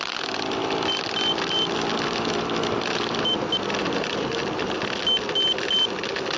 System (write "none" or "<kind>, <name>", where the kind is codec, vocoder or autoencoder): none